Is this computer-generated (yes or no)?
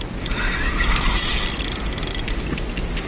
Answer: no